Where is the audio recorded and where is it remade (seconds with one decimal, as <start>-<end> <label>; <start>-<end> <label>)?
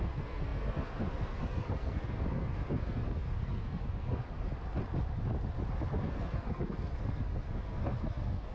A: 0.0-4.2 remade; 4.2-5.9 recorded; 5.9-8.5 remade